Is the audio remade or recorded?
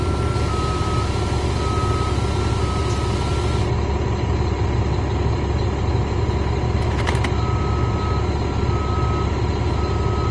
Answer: recorded